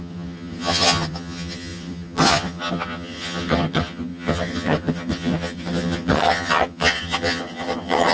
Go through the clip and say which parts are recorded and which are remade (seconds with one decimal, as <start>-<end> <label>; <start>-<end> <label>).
0.0-8.1 remade